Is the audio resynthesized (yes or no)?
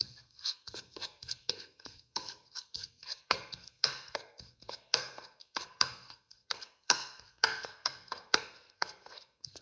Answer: yes